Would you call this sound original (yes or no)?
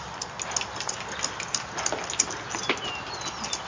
yes